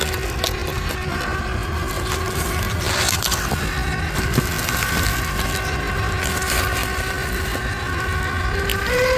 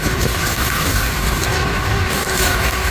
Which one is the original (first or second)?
first